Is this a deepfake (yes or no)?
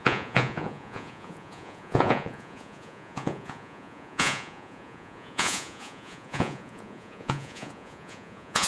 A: yes